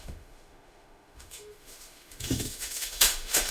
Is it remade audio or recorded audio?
remade